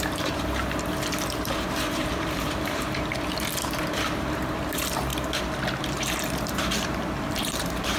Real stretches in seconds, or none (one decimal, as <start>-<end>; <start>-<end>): 5.1-5.9